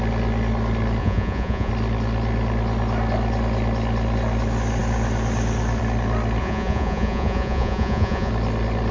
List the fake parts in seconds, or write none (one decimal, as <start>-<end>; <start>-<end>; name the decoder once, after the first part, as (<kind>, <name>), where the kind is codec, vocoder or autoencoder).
1.0-1.7 (vocoder, Vocos); 6.4-8.3